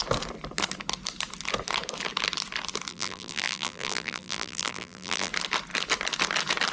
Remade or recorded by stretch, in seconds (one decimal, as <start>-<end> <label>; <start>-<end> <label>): 0.0-2.9 recorded; 2.9-5.3 remade; 5.3-6.7 recorded